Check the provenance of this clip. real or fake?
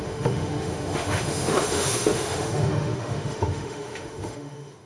fake